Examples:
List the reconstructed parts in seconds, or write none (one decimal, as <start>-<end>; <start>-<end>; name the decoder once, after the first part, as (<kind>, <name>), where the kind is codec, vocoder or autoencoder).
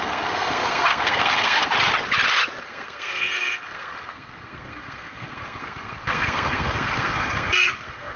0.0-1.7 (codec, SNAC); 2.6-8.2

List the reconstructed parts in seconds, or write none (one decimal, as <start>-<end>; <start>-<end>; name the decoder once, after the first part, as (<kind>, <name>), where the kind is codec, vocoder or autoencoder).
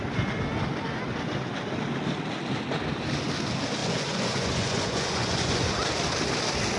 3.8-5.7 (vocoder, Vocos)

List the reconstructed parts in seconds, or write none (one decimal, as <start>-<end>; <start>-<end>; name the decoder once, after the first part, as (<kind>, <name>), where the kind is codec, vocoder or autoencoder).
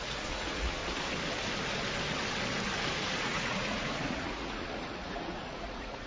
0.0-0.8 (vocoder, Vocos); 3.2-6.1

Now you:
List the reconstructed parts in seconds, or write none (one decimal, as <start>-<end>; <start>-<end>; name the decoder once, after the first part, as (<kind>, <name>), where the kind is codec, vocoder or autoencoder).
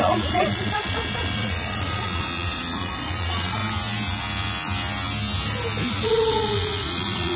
0.0-3.6 (vocoder, Vocos); 5.9-7.4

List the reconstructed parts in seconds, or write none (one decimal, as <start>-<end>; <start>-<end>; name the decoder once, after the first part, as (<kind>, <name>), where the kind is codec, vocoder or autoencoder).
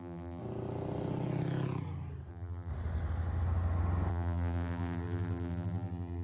0.0-0.4 (vocoder, BigVGAN v2); 2.3-2.7; 4.1-6.2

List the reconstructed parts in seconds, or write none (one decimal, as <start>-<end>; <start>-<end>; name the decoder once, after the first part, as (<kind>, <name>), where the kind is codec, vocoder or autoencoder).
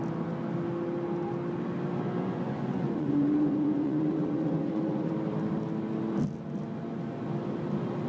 2.2-5.1 (vocoder, Vocos)